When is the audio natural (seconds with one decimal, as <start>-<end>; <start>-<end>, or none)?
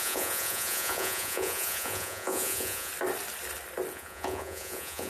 2.9-3.9